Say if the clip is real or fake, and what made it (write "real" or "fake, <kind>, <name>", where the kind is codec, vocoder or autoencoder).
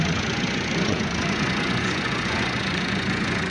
fake, vocoder, Vocos